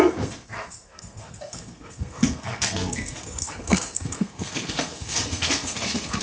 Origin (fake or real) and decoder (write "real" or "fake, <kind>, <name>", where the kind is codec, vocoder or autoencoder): fake, codec, SNAC